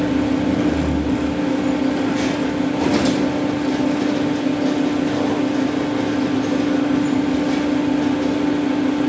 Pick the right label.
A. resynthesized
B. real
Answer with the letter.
B